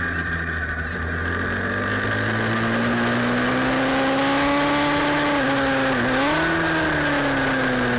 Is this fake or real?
real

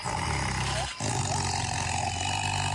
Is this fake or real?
real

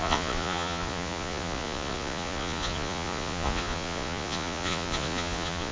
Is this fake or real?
fake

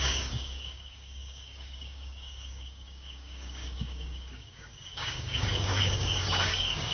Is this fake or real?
fake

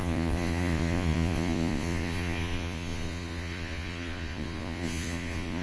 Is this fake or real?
fake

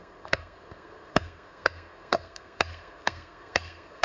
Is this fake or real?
fake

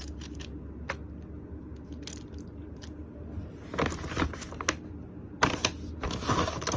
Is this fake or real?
real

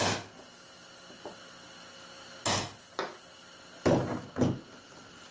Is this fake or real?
real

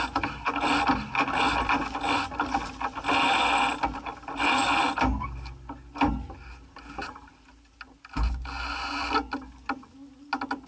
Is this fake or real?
real